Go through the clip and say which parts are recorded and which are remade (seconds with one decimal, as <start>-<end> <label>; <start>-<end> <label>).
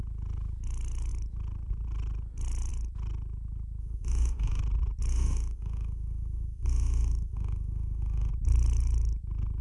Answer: 0.0-3.8 recorded; 3.8-4.6 remade; 4.6-5.1 recorded; 5.1-8.3 remade; 8.3-9.6 recorded